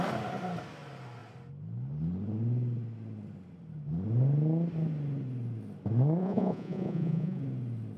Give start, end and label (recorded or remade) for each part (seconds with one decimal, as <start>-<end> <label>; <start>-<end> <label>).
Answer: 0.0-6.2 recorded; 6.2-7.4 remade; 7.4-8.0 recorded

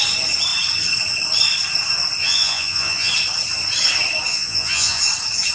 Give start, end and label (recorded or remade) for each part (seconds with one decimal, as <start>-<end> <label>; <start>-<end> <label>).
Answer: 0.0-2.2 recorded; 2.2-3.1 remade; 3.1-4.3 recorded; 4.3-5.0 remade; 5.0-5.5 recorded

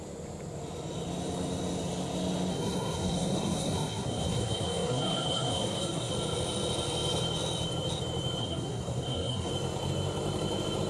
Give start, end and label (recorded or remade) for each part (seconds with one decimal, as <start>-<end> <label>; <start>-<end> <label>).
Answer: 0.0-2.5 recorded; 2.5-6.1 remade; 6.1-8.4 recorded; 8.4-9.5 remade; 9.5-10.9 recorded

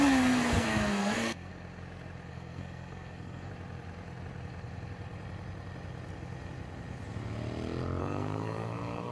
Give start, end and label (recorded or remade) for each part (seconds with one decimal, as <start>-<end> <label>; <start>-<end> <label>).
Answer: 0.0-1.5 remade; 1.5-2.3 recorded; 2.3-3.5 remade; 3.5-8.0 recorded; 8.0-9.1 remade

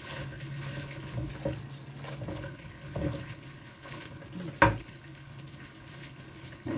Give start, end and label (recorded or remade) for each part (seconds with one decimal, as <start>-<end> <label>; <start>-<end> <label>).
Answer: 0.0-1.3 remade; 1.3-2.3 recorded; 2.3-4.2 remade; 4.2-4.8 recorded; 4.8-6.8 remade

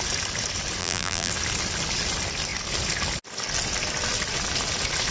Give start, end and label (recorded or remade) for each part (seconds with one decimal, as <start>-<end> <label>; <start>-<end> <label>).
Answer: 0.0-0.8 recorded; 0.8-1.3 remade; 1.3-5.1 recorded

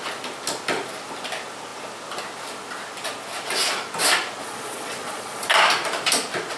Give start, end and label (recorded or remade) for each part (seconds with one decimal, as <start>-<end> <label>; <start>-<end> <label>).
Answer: 0.0-4.4 recorded; 4.4-5.5 remade; 5.5-6.6 recorded